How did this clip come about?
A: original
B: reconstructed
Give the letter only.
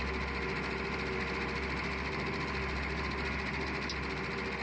A